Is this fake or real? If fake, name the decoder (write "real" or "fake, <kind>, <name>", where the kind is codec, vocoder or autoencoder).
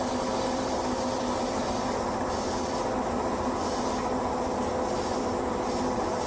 real